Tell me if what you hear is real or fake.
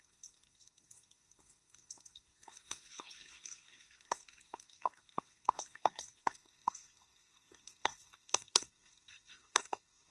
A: fake